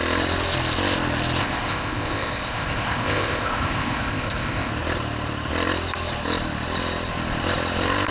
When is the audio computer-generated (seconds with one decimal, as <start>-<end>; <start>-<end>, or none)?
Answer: 1.4-4.7